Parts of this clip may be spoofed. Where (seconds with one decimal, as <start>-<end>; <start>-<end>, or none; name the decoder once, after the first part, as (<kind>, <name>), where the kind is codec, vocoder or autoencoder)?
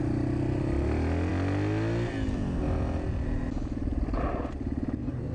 none